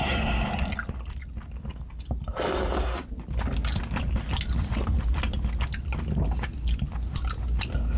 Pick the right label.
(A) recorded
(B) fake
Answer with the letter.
A